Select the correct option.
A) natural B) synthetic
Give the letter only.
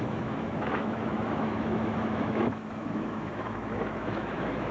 B